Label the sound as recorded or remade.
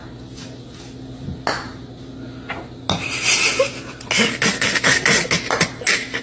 recorded